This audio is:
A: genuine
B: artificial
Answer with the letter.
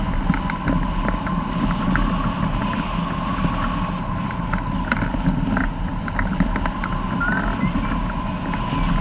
A